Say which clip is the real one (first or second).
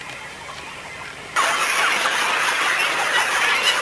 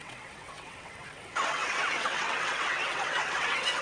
first